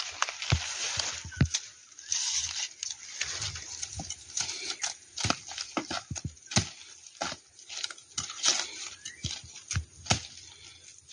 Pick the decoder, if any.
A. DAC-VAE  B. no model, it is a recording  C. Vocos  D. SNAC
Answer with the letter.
B